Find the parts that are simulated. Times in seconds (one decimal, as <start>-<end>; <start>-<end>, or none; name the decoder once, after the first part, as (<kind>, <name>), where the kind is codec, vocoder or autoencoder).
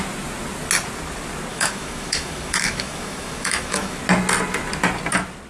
1.5-4.0 (autoencoder, DAC-VAE)